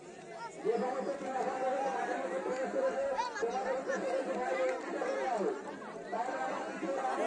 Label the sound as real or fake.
real